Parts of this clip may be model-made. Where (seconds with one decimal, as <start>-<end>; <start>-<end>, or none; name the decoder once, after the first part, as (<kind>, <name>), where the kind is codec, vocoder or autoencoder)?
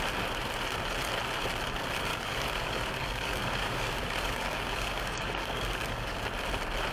2.1-6.2 (codec, DAC)